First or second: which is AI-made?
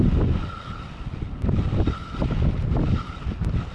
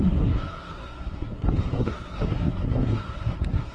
second